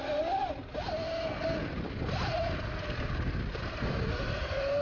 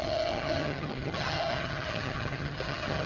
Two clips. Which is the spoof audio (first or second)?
second